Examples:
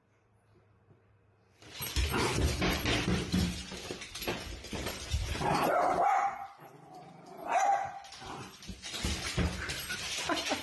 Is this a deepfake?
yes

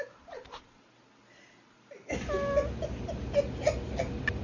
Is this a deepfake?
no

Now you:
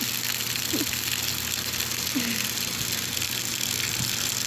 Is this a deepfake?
no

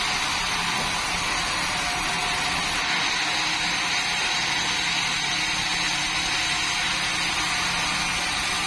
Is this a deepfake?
no